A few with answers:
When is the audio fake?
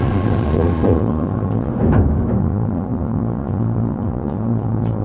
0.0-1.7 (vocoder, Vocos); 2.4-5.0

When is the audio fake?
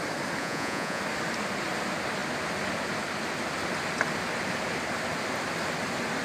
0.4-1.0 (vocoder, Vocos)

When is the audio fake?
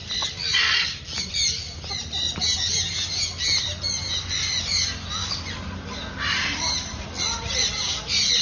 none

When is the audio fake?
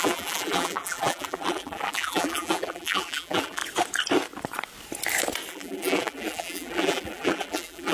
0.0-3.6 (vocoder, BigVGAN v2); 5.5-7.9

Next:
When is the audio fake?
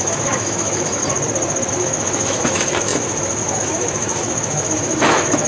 0.0-1.0 (autoencoder, DAC-VAE); 1.7-5.5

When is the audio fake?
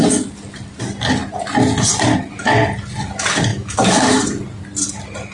3.5-4.2 (autoencoder, DAC-VAE)